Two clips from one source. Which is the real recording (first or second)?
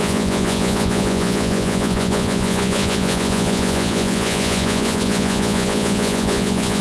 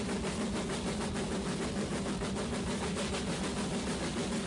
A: second